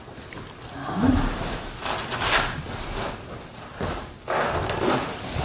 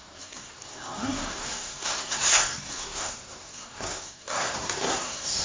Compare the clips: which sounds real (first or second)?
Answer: first